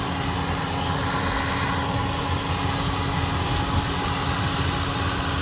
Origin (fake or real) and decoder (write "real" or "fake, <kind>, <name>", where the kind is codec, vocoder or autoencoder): real